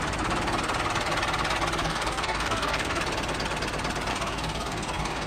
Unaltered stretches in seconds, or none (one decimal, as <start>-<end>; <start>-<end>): 0.0-1.8; 3.0-4.1

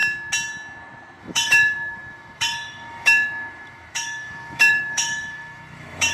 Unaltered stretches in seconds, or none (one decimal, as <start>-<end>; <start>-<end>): 0.0-1.2

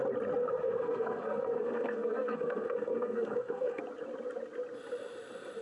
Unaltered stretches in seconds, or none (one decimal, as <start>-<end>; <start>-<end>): 0.0-0.4; 3.8-5.6